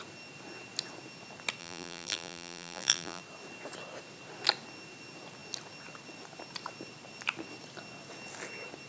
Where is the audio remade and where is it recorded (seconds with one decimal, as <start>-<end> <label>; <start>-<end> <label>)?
0.0-1.6 recorded; 1.6-3.2 remade; 3.2-8.9 recorded

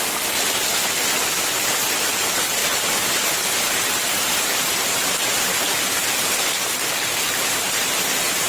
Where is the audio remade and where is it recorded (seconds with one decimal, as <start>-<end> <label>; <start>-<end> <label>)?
0.0-8.5 recorded

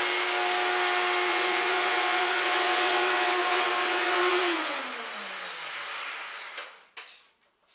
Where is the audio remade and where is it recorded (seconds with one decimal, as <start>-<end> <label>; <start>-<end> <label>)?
0.0-1.3 recorded; 1.3-4.8 remade; 4.8-7.7 recorded

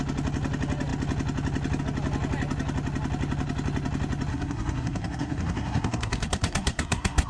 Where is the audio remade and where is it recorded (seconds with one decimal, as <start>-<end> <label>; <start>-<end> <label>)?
0.0-4.3 recorded; 4.3-7.3 remade